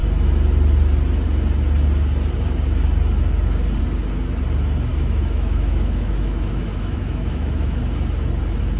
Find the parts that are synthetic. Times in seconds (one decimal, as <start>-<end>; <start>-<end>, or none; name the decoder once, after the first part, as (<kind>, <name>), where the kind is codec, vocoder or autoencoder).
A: 4.9-7.8 (autoencoder, DAC-VAE)

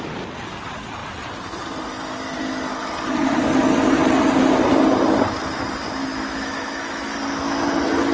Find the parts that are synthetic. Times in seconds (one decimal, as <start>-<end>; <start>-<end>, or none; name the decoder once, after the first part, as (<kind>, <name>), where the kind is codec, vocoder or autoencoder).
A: 6.0-7.0 (autoencoder, DAC-VAE)

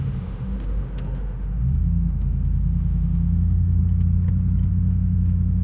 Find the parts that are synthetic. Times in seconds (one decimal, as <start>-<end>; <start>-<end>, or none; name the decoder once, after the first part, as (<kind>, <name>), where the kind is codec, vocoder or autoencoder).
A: 0.0-3.8 (autoencoder, DAC-VAE); 4.7-5.6

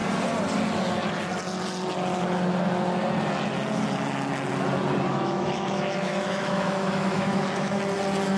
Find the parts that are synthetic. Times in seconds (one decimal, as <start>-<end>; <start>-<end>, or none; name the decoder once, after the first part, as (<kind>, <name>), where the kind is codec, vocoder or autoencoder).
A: 5.1-7.8 (autoencoder, DAC-VAE)

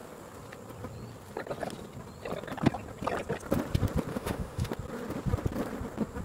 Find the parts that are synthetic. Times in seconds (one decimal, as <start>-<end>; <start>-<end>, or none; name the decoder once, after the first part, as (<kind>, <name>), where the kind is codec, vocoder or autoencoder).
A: 4.1-4.7 (autoencoder, DAC-VAE)

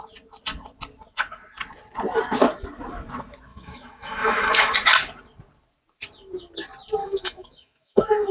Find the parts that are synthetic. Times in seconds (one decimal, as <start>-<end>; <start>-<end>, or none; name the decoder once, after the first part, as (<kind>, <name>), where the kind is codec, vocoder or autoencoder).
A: 3.5-4.7 (autoencoder, DAC-VAE); 7.0-8.3

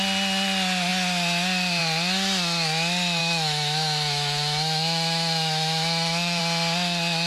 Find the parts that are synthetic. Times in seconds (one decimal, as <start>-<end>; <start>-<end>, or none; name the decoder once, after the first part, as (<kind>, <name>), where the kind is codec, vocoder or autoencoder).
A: 3.2-6.4 (autoencoder, DAC-VAE)